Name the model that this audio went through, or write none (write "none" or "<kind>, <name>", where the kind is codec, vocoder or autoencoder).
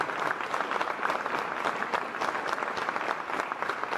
none